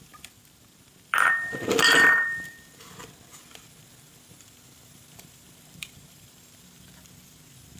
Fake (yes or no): yes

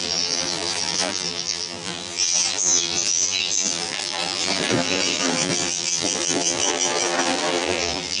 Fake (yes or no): yes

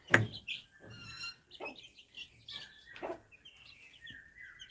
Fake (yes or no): yes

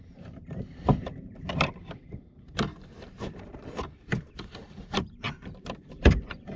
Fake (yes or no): yes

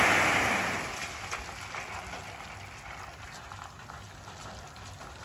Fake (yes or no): no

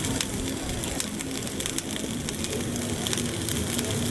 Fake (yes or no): no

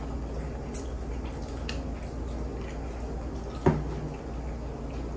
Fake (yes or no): no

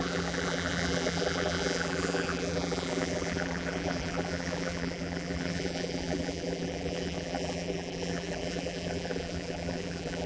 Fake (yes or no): yes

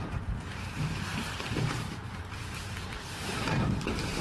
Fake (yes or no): yes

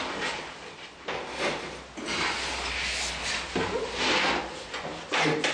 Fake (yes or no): no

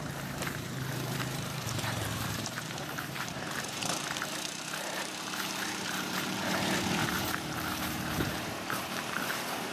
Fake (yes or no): yes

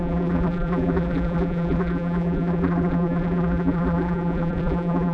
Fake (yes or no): yes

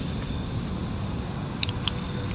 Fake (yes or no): no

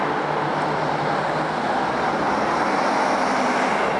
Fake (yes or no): no